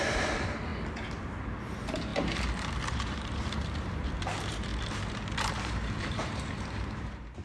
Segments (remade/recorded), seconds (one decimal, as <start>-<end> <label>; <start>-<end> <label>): 0.0-0.7 remade; 0.7-1.6 recorded; 1.6-7.4 remade